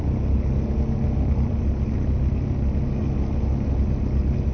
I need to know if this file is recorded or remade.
recorded